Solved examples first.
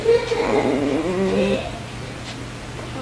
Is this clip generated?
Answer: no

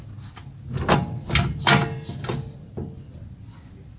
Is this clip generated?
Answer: no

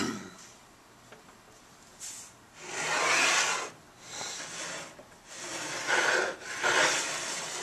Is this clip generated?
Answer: no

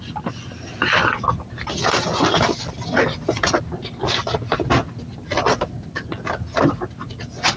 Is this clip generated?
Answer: no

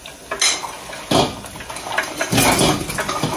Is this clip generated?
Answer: no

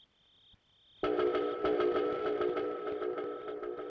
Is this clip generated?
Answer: no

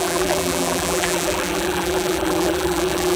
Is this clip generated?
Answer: yes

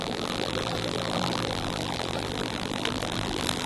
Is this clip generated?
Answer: yes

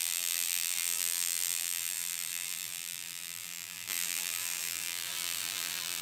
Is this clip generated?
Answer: yes